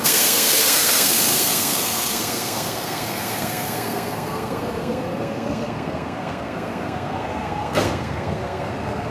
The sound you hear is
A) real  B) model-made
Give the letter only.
B